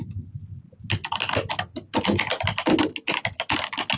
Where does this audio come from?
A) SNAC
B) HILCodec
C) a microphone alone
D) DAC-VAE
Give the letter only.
C